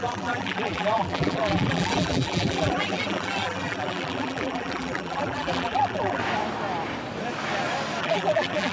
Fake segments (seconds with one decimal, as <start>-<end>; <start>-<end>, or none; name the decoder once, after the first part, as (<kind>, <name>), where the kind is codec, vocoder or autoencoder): 0.0-6.2 (vocoder, BigVGAN v2); 8.0-8.7